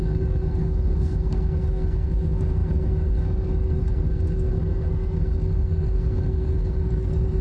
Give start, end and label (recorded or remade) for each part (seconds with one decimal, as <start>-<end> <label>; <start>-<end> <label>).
0.0-7.4 remade